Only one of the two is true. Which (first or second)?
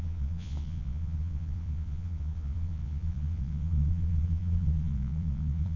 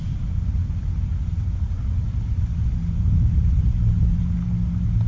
second